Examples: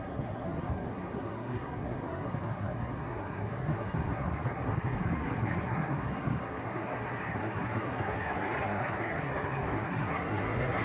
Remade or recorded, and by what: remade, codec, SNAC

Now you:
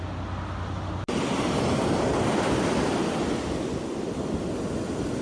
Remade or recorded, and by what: recorded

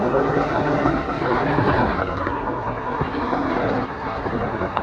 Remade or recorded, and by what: remade, codec, SNAC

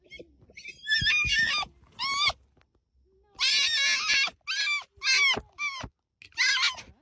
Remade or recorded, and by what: recorded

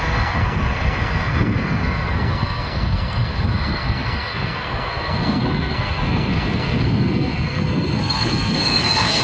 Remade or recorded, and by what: remade, codec, SNAC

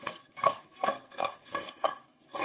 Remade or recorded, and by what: remade, codec, SNAC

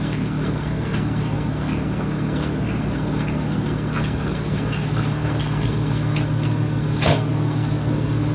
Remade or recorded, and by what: remade, codec, SNAC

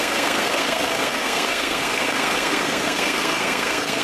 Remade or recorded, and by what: remade, codec, SNAC